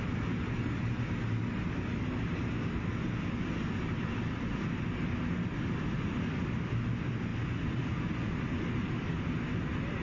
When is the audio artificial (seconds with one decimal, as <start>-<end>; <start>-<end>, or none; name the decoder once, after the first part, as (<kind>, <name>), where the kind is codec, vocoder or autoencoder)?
none